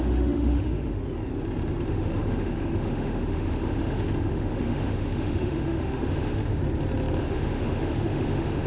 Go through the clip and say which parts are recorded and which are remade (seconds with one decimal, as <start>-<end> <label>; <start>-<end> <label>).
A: 0.0-1.0 remade; 1.0-1.9 recorded; 1.9-6.6 remade; 6.6-7.2 recorded; 7.2-8.7 remade